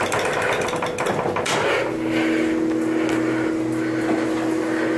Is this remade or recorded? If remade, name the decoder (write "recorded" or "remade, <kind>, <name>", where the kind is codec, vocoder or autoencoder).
recorded